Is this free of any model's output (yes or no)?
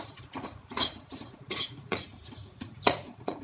no